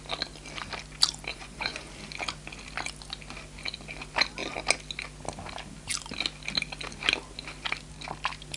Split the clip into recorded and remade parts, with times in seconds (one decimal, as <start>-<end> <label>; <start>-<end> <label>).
0.0-1.3 recorded; 1.3-1.9 remade; 1.9-8.6 recorded